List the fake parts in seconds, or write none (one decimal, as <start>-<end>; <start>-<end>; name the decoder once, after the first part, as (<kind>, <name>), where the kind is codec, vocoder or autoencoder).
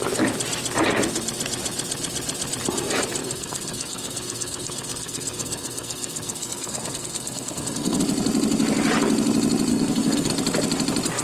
3.2-8.0 (codec, SNAC); 9.7-10.3